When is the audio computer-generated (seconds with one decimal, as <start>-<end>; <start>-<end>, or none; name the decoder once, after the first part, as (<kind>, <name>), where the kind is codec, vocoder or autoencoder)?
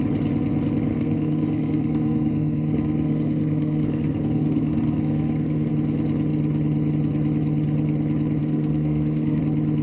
0.9-5.7 (codec, SNAC); 8.4-9.4